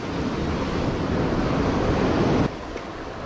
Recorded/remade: recorded